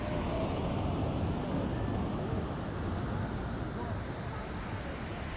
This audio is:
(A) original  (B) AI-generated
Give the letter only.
A